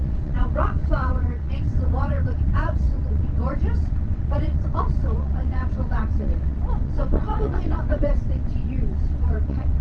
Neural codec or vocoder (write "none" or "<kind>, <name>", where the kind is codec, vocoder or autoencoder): vocoder, WaveNeXt